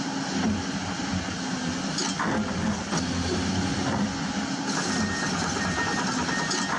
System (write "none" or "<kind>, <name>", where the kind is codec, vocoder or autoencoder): none